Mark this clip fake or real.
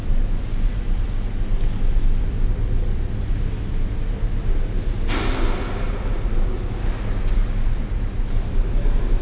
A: real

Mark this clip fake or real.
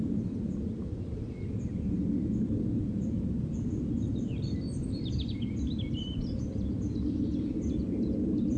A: fake